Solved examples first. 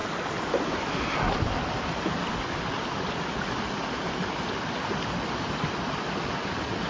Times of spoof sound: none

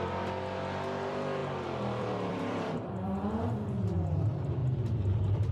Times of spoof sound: 1.4-3.3 (vocoder, BigVGAN v2); 4.6-5.5

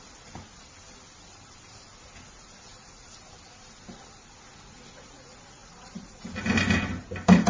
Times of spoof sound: 5.6-6.4 (vocoder, BigVGAN v2)